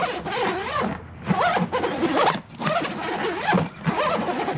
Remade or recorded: recorded